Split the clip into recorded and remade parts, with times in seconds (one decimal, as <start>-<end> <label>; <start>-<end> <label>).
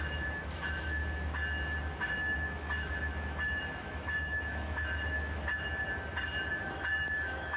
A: 0.0-1.0 remade; 1.0-1.8 recorded; 1.8-5.4 remade; 5.4-6.6 recorded; 6.6-7.6 remade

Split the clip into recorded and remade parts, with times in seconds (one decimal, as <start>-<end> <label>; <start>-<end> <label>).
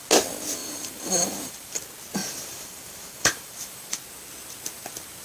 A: 0.0-0.6 recorded; 0.6-1.8 remade; 1.8-2.2 recorded; 2.2-3.9 remade; 3.9-5.2 recorded